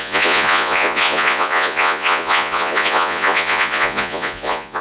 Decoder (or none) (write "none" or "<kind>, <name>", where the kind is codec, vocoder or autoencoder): vocoder, Vocos